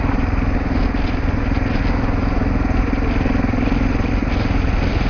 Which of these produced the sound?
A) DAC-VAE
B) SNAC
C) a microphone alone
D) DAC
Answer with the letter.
C